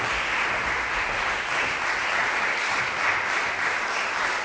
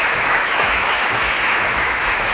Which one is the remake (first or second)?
second